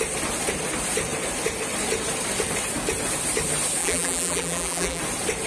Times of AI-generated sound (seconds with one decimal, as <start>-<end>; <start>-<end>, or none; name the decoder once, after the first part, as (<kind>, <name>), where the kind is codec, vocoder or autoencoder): 3.8-5.0 (vocoder, BigVGAN v2)